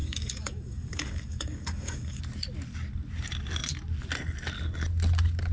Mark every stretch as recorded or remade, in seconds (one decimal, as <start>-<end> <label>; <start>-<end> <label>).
0.0-2.2 remade; 2.2-5.5 recorded